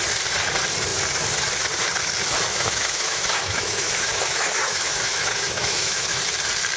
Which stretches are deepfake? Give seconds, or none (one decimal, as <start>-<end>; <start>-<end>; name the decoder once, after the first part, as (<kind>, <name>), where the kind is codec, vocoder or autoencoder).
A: 2.5-6.2 (autoencoder, DAC-VAE)